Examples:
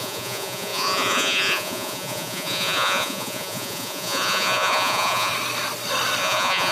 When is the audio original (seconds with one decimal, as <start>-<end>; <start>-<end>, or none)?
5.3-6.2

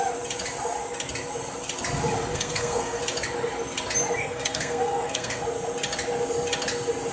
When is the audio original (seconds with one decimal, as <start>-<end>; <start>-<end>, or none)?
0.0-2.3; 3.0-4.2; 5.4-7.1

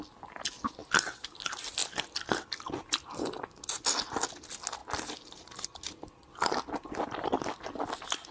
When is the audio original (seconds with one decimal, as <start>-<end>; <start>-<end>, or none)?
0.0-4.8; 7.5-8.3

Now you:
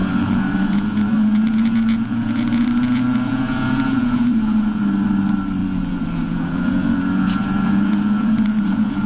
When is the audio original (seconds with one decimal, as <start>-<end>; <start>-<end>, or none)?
4.8-5.6

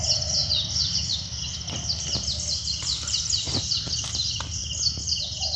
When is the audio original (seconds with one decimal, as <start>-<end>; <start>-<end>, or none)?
0.0-5.6

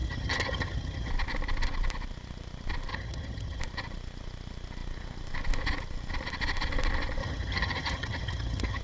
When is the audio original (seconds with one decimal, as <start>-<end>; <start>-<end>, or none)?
1.1-2.9; 3.6-7.2